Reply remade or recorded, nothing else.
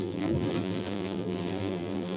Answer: remade